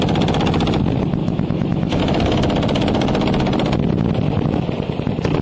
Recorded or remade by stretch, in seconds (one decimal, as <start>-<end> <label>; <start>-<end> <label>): 0.0-1.2 recorded; 1.2-2.0 remade; 2.0-5.4 recorded

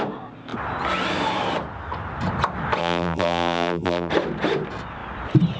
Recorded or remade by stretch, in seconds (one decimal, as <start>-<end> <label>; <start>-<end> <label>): 0.0-2.8 recorded; 2.8-4.1 remade; 4.1-5.6 recorded

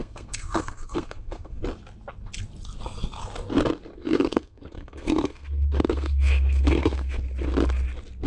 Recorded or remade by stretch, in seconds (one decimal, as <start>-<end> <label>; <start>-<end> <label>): 0.0-1.6 remade; 1.6-4.0 recorded; 4.0-7.2 remade; 7.2-8.3 recorded

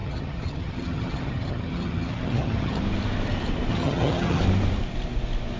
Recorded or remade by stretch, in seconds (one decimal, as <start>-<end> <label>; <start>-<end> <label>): 0.0-2.8 remade; 2.8-3.7 recorded; 3.7-4.4 remade; 4.4-5.6 recorded